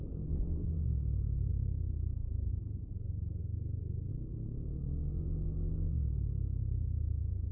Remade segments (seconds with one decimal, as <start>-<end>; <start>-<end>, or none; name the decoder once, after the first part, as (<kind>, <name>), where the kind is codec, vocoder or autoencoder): 1.5-2.5 (codec, SNAC); 3.4-4.1